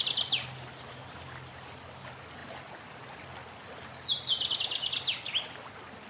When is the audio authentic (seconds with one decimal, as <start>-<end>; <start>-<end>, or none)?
0.0-6.1